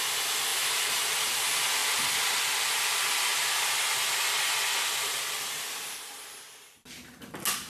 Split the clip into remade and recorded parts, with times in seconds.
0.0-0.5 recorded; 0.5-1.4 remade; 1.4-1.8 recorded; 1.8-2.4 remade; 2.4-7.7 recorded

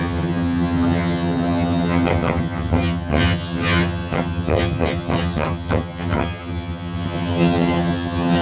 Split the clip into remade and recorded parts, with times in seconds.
0.0-8.4 remade

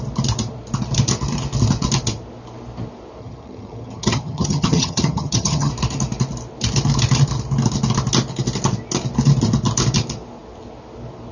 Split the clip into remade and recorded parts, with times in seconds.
0.0-3.2 recorded; 3.2-5.7 remade; 5.7-11.3 recorded

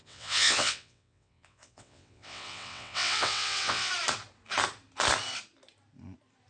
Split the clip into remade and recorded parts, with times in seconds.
0.0-3.9 remade; 3.9-6.5 recorded